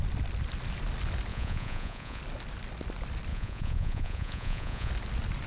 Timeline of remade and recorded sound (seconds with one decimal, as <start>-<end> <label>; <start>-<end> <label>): 0.0-1.3 recorded; 1.3-2.2 remade; 2.2-3.3 recorded; 3.3-4.9 remade; 4.9-5.5 recorded